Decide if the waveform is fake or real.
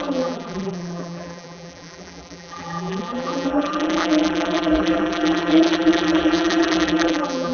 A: fake